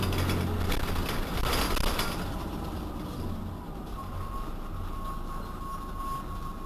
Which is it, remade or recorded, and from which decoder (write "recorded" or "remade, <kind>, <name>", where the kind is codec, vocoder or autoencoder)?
recorded